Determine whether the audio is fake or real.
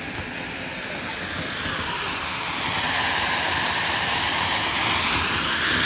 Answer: real